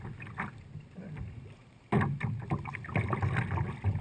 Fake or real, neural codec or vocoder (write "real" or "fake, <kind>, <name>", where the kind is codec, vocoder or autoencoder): real